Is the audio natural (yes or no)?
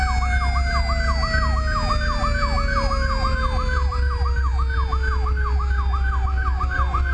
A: yes